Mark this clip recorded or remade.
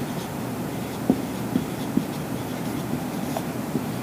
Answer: recorded